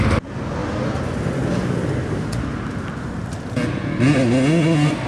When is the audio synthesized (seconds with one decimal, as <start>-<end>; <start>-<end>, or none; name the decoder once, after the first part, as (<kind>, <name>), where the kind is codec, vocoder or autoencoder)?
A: none